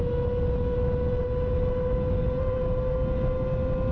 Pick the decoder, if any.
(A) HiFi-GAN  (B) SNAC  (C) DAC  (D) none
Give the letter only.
D